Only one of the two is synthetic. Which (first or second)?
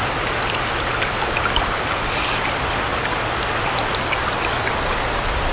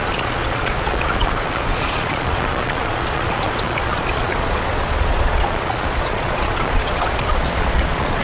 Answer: second